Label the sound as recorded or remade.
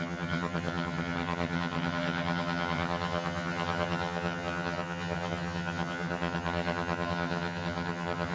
remade